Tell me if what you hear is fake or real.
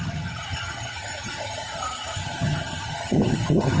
fake